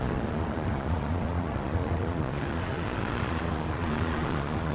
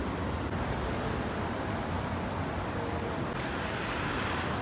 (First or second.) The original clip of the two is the second